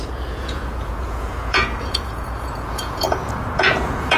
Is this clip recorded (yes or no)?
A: no